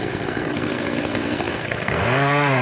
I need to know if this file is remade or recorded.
remade